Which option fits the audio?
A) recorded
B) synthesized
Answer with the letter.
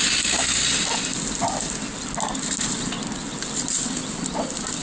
A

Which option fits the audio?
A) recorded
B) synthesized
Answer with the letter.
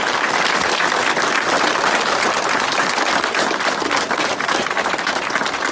A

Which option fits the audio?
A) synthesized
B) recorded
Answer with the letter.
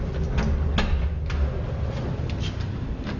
B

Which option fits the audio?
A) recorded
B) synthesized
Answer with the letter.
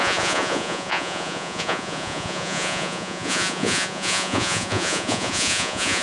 B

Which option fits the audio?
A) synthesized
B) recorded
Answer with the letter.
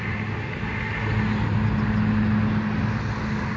B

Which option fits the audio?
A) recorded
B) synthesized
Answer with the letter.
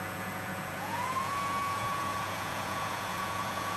B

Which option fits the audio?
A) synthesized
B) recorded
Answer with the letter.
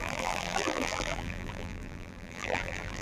A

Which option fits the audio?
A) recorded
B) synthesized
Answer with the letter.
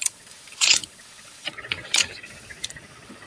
B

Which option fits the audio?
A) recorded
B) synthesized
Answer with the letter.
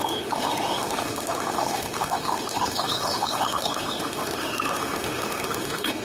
B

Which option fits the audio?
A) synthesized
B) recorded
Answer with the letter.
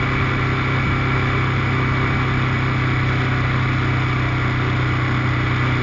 B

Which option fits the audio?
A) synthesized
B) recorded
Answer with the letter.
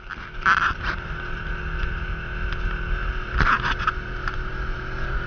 B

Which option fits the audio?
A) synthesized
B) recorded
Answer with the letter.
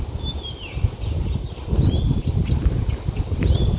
B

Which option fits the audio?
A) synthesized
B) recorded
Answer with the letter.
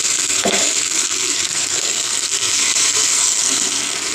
A